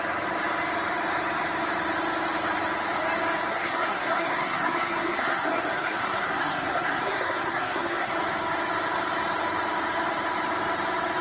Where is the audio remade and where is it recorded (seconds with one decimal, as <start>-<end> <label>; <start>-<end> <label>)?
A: 0.0-3.5 recorded; 3.5-8.1 remade; 8.1-11.2 recorded